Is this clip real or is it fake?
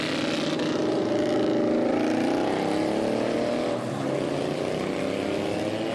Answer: real